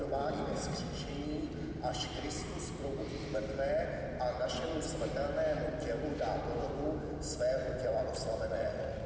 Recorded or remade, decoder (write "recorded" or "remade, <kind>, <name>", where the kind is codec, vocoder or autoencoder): recorded